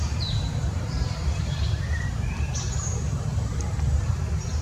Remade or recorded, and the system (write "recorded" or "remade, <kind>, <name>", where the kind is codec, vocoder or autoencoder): remade, vocoder, BigVGAN v2